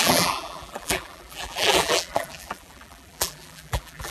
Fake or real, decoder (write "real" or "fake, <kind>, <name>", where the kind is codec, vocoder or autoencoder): fake, vocoder, BigVGAN v2